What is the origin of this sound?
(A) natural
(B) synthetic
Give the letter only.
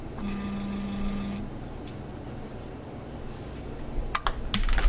A